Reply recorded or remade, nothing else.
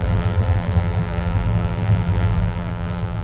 remade